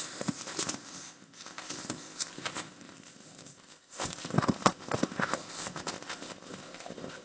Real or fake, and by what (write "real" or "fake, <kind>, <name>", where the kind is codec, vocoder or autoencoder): fake, codec, ZipCodec